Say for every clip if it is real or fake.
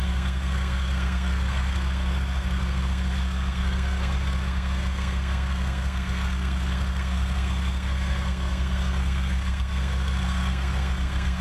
fake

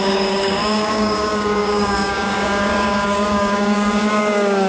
fake